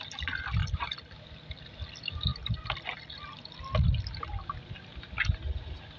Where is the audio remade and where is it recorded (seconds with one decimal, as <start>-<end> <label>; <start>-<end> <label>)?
0.0-6.0 recorded